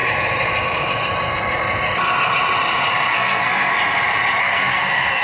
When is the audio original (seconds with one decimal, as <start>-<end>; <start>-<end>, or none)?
0.0-3.1; 3.7-4.4